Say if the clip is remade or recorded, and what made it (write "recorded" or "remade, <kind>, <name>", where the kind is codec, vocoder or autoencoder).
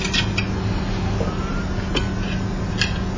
recorded